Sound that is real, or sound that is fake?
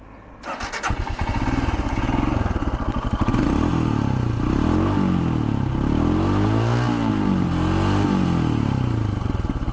real